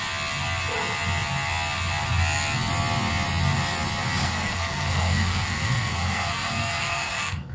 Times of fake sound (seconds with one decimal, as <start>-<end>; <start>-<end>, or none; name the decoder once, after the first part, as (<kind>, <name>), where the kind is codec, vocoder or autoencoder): 4.2-7.5 (codec, SNAC)